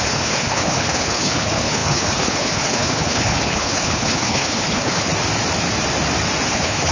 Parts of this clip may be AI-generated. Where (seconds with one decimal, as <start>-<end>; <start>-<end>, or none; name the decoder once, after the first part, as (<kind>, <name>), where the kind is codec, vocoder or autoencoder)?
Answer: 0.0-5.1 (codec, HILCodec); 6.5-6.9